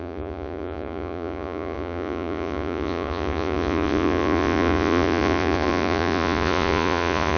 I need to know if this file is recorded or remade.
remade